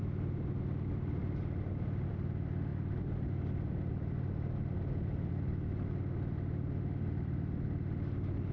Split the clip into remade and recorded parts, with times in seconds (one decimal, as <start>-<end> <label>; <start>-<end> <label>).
0.0-8.5 recorded